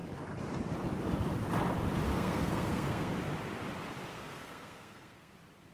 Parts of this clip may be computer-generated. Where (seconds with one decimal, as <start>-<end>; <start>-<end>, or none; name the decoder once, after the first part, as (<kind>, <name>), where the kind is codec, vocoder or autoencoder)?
2.1-3.1 (codec, SNAC); 4.1-5.3